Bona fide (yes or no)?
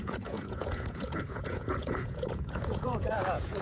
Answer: no